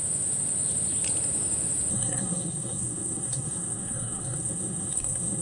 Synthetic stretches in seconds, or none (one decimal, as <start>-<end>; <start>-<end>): 1.9-5.4